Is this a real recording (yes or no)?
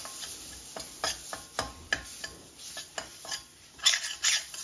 yes